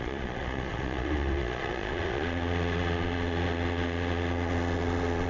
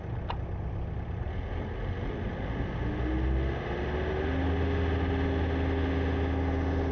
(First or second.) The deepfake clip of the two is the first